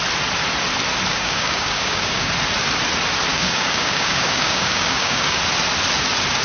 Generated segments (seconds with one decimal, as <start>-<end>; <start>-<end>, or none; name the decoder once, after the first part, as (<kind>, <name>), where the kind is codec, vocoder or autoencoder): 1.1-2.3 (codec, DAC); 3.3-5.4

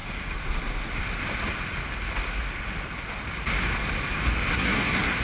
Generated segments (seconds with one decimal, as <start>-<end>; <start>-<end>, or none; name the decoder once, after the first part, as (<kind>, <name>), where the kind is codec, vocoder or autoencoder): 4.5-5.2 (codec, SNAC)

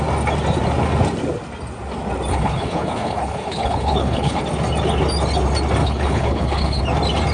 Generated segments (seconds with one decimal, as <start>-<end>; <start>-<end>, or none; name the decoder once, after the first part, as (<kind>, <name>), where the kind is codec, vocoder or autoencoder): 2.3-4.4 (codec, HILCodec); 5.8-6.8